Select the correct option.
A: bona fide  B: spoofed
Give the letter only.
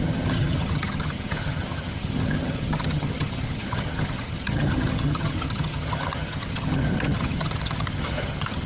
B